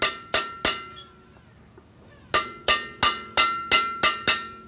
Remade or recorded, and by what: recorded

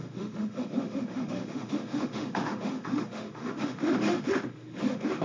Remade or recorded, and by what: remade, autoencoder, DAC-VAE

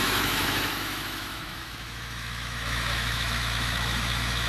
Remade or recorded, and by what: remade, autoencoder, DAC-VAE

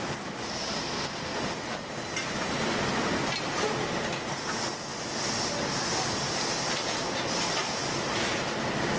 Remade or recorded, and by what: recorded